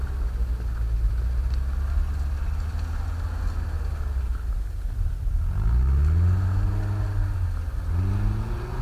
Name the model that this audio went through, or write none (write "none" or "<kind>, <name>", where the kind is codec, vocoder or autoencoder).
none